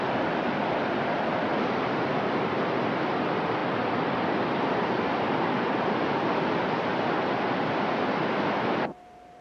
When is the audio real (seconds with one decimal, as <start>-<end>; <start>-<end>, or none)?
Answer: 6.9-7.6